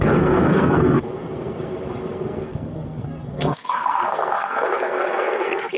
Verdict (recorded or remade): remade